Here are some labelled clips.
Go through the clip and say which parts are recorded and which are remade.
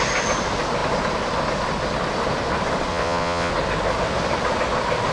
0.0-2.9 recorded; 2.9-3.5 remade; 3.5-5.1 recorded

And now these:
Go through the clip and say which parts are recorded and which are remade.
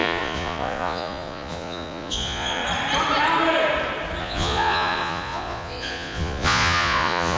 0.0-2.6 remade; 2.6-4.2 recorded; 4.2-7.4 remade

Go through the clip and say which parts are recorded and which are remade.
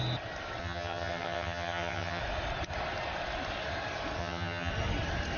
0.0-0.6 recorded; 0.6-2.2 remade; 2.2-4.2 recorded; 4.2-4.7 remade; 4.7-5.4 recorded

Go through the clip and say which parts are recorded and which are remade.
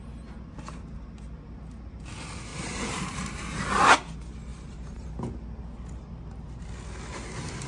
0.0-2.5 recorded; 2.5-3.6 remade; 3.6-4.5 recorded; 4.5-5.1 remade; 5.1-7.7 recorded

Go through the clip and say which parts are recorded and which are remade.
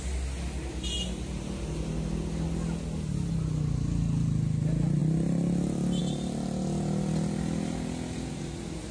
0.0-8.9 recorded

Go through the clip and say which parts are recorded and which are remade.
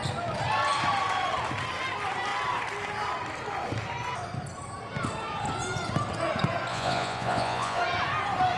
0.0-6.7 recorded; 6.7-7.8 remade; 7.8-8.6 recorded